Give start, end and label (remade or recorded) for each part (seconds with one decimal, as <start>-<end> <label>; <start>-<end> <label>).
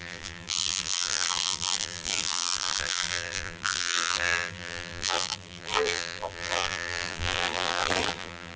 0.0-8.6 remade